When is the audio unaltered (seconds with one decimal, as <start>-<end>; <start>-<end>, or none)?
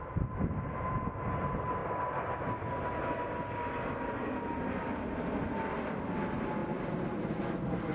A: 0.0-7.9